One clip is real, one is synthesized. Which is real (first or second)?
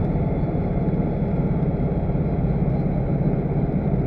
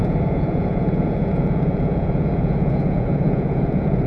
first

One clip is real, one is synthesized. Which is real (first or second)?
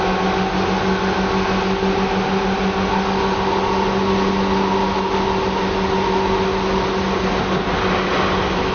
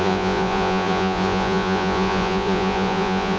first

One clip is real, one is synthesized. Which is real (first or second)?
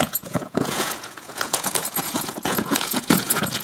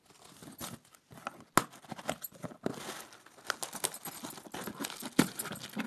second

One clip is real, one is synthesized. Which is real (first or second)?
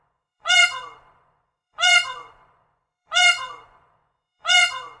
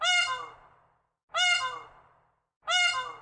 second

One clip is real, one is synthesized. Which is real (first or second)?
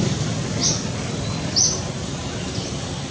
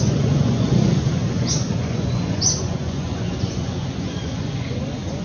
first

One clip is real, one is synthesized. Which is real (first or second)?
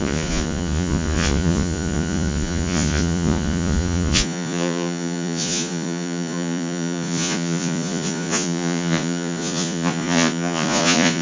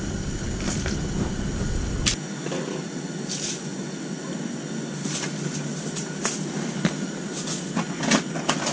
second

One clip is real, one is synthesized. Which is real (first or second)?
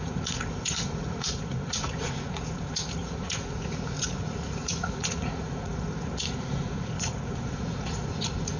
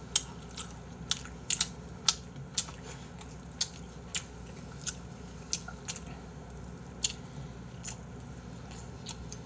second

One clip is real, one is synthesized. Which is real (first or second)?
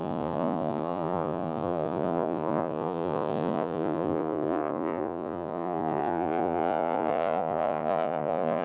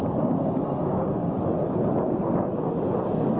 second